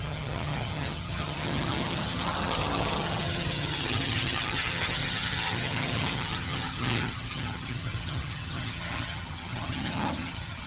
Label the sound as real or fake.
fake